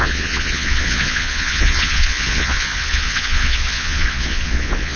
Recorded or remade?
remade